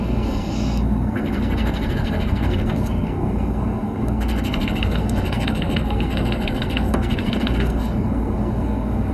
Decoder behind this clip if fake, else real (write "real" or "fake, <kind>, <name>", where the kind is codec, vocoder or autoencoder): fake, codec, SNAC